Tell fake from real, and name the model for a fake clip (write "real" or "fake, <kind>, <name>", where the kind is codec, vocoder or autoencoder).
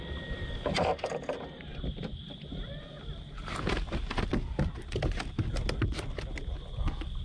real